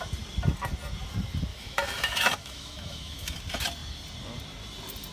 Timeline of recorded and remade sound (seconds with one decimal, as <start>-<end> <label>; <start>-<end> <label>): 0.0-1.5 recorded; 1.5-3.4 remade; 3.4-5.1 recorded